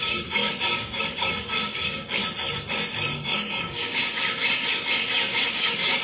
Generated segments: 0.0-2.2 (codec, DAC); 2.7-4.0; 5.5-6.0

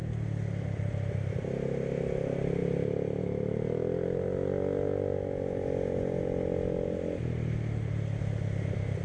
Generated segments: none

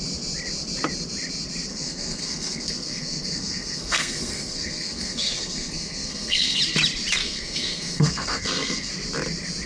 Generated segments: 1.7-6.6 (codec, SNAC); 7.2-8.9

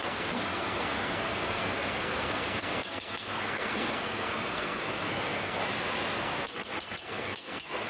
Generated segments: 0.0-5.6 (codec, SNAC); 6.2-7.9